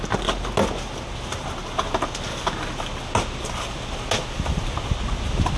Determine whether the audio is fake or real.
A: real